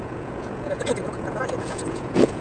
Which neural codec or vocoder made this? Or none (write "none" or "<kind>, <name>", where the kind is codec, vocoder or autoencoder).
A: vocoder, Vocos